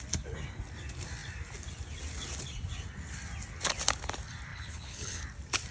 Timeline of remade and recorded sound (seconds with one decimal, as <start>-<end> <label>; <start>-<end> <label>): 0.0-4.5 recorded; 4.5-5.2 remade; 5.2-5.7 recorded